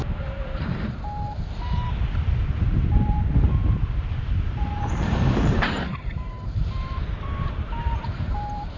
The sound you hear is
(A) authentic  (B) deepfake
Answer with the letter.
B